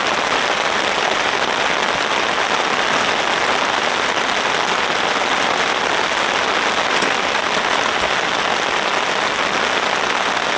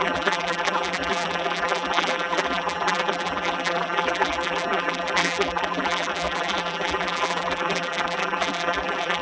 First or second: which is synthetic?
second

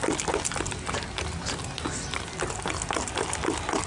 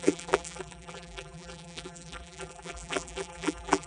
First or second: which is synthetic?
second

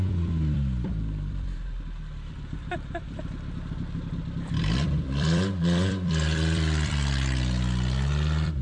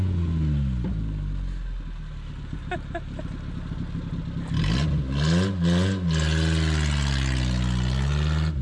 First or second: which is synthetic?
first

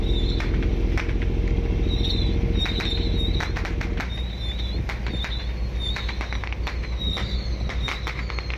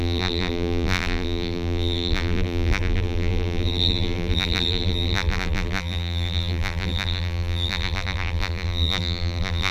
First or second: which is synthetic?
second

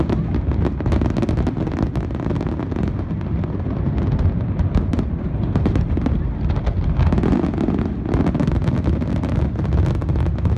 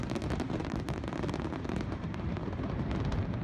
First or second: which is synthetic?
second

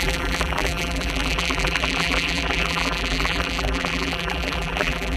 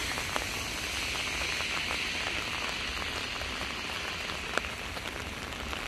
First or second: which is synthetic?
first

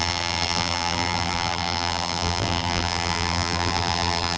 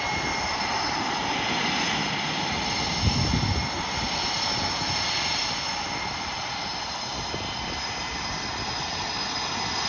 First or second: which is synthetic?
first